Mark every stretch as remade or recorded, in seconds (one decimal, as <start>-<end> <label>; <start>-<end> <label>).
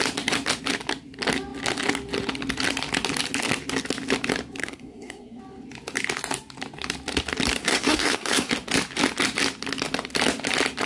0.0-4.6 recorded; 4.6-5.4 remade; 5.4-7.6 recorded; 7.6-8.5 remade; 8.5-10.9 recorded